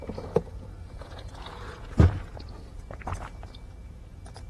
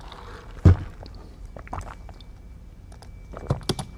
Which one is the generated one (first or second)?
first